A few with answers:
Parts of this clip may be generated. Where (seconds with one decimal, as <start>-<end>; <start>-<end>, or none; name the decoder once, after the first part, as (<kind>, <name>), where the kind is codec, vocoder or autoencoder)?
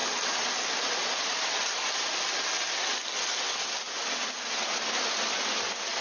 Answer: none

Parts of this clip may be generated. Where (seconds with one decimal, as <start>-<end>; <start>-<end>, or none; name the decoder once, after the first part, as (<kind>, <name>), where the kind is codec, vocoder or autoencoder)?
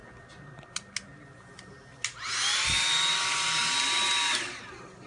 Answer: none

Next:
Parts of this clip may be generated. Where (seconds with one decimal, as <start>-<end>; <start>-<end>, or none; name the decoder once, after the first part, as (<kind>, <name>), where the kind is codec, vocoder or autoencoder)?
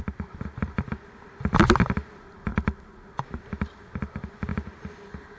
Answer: none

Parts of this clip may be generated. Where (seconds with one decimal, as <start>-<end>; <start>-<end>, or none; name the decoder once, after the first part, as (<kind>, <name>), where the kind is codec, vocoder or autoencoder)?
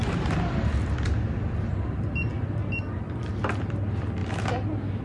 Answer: none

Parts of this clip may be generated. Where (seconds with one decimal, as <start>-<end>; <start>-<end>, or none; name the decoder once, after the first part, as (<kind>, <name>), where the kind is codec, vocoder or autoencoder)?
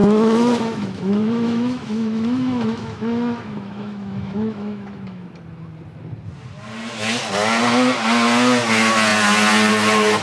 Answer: 0.0-5.3 (autoencoder, DAC-VAE)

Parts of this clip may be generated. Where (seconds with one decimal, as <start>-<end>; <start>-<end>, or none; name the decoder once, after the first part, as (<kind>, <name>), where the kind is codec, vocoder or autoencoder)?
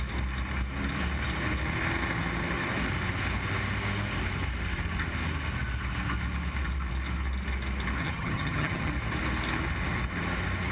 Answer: 8.0-8.9 (vocoder, HiFi-GAN)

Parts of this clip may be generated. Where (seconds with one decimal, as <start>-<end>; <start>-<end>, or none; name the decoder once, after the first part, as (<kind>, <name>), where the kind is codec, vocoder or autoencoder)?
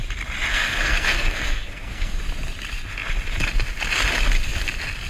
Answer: 0.5-2.2 (codec, SNAC)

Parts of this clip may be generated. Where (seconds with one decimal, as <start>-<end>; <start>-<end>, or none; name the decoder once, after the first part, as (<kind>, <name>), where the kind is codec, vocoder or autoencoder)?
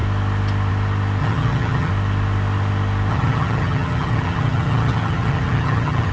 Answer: 1.2-1.9 (vocoder, HiFi-GAN); 3.1-6.1